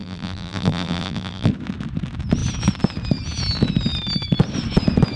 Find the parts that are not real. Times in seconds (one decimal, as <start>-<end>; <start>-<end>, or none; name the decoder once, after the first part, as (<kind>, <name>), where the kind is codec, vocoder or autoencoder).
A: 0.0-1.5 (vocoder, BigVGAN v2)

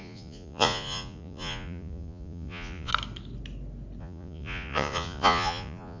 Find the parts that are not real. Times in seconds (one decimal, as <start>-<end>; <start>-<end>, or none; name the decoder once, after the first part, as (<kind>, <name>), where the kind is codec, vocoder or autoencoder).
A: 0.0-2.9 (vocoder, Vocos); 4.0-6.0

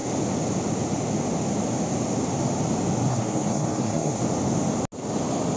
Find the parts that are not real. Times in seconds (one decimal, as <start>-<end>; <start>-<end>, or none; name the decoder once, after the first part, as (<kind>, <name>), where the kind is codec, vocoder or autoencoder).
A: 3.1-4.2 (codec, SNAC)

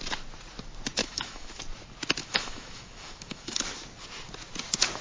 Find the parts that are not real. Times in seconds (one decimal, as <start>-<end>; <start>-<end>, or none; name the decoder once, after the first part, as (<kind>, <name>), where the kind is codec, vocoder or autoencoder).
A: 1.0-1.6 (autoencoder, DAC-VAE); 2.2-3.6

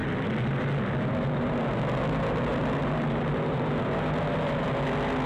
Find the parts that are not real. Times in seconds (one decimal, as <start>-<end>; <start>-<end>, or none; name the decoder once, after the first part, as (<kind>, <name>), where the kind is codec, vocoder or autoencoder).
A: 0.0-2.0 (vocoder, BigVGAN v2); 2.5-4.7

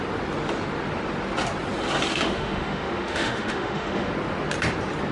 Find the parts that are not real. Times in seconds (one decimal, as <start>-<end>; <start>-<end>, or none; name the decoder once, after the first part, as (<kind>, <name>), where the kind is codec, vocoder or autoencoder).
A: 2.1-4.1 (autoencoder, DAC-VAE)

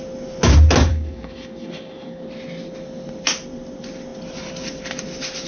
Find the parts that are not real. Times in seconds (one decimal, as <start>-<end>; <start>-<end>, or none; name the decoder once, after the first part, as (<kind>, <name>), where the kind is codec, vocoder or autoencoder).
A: 0.9-2.2 (codec, DAC)